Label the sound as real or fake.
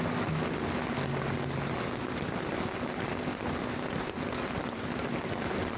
real